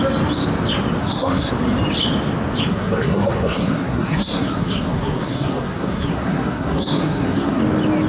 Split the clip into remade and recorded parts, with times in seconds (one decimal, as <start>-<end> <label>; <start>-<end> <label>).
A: 0.0-1.0 recorded; 1.0-1.5 remade; 1.5-2.7 recorded; 2.7-7.6 remade; 7.6-8.1 recorded